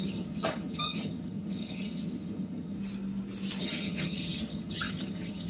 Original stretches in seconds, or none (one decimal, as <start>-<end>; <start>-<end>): 2.8-3.6